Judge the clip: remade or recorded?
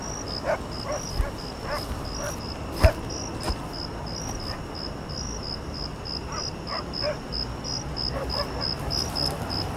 recorded